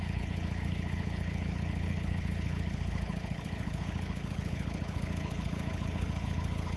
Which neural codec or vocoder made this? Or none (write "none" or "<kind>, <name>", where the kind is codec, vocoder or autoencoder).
codec, HILCodec